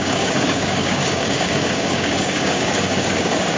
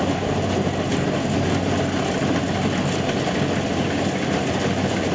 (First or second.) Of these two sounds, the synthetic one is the first